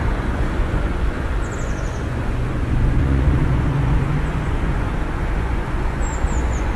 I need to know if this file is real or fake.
fake